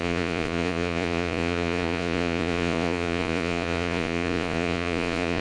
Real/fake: fake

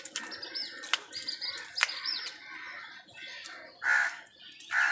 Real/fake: real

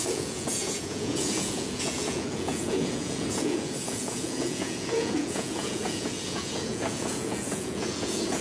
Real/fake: fake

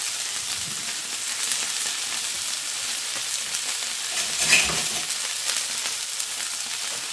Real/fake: real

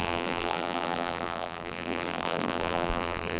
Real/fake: fake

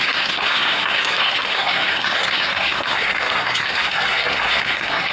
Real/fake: fake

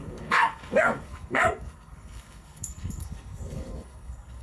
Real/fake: fake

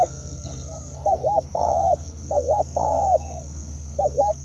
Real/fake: fake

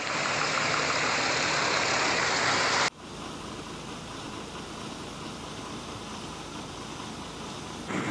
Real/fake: real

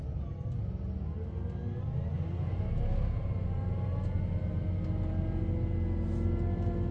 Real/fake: real